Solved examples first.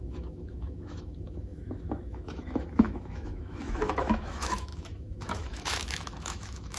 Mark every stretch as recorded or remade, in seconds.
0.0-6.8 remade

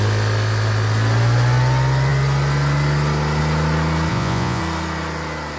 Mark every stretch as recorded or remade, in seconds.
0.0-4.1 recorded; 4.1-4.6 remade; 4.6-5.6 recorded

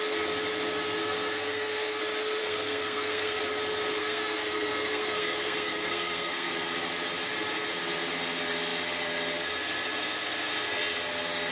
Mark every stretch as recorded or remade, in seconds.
0.0-1.0 recorded; 1.0-2.0 remade; 2.0-2.4 recorded; 2.4-3.4 remade; 3.4-4.0 recorded; 4.0-6.5 remade; 6.5-11.5 recorded

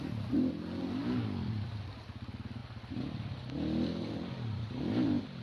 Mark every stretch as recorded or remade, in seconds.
0.0-1.0 recorded; 1.0-1.5 remade; 1.5-5.4 recorded